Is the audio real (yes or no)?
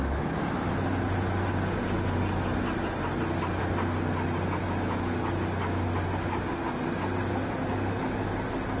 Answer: yes